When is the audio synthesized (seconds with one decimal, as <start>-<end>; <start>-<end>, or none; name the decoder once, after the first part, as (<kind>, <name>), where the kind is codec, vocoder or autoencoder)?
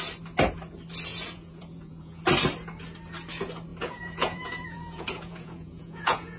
1.1-2.2 (vocoder, Vocos); 3.7-6.4